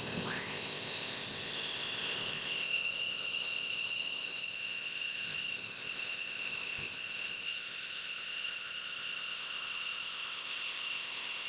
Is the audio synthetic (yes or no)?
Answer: yes